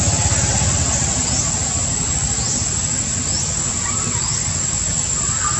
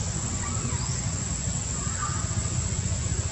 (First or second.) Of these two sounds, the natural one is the first